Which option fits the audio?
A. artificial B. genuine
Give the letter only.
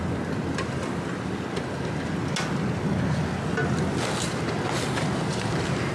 B